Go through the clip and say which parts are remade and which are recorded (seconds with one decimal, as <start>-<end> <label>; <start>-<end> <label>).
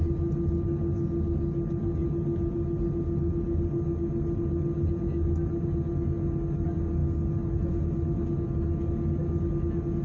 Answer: 0.0-10.0 recorded